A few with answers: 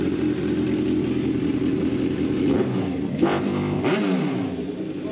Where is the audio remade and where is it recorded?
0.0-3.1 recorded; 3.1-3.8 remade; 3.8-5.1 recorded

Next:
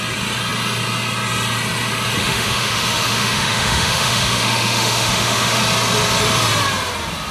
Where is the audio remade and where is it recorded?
0.0-2.2 recorded; 2.2-5.6 remade; 5.6-7.3 recorded

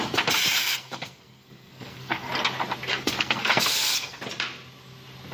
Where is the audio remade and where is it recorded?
0.0-0.6 recorded; 0.6-2.3 remade; 2.3-2.9 recorded; 2.9-4.2 remade; 4.2-5.3 recorded

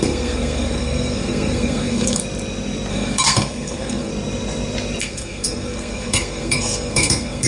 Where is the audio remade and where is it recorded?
0.0-2.2 remade; 2.2-2.9 recorded; 2.9-4.1 remade; 4.1-5.0 recorded; 5.0-7.5 remade

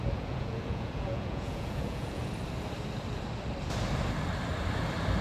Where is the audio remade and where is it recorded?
0.0-2.2 remade; 2.2-5.2 recorded

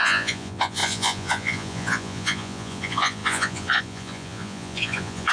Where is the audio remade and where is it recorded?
0.0-5.3 remade

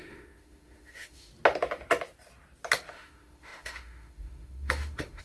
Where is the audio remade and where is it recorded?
0.0-1.3 remade; 1.3-2.9 recorded; 2.9-5.2 remade

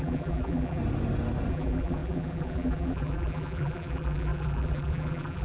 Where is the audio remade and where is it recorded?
0.0-0.8 remade; 0.8-1.5 recorded; 1.5-5.4 remade